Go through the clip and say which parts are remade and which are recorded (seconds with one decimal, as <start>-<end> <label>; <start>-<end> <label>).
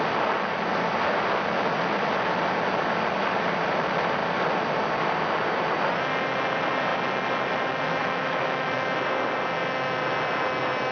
0.0-8.0 recorded; 8.0-8.7 remade; 8.7-10.9 recorded